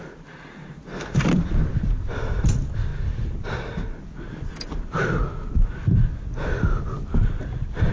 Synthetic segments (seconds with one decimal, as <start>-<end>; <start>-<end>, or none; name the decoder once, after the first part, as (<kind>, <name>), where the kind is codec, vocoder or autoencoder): none